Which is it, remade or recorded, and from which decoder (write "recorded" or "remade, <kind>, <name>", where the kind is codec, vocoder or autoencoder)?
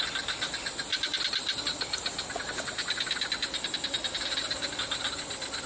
recorded